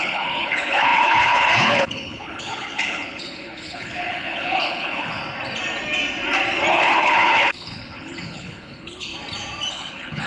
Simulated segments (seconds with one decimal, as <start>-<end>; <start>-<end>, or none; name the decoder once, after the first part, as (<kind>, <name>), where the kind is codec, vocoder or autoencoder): 0.0-5.2 (codec, HILCodec); 6.7-9.1; 9.7-10.3